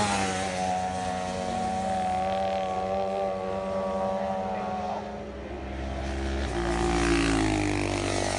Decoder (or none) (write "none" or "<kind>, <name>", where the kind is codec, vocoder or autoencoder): none